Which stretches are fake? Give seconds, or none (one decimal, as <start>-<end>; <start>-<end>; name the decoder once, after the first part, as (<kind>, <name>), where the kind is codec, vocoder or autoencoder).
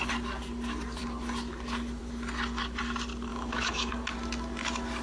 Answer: 3.3-3.9 (autoencoder, DAC-VAE)